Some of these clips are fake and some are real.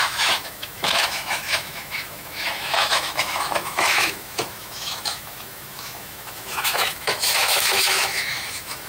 fake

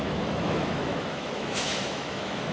fake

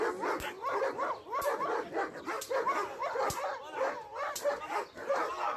real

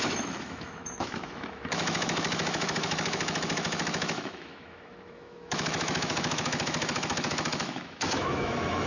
fake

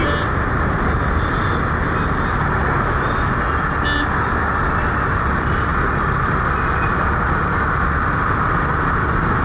real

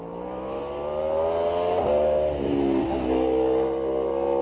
real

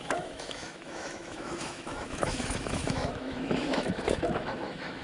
fake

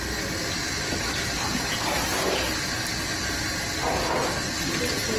real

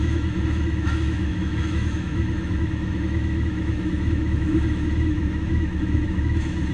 fake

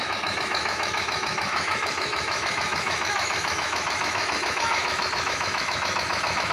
fake